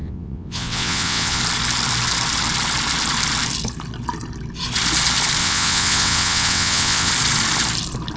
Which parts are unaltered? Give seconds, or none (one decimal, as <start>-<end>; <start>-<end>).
1.4-5.4; 7.1-8.2